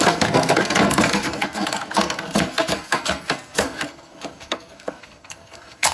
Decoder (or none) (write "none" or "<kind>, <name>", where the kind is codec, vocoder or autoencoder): codec, SNAC